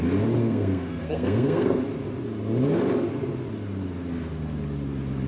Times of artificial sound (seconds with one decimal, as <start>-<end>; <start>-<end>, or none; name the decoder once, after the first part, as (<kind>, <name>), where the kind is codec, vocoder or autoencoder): 0.4-1.8 (codec, SNAC)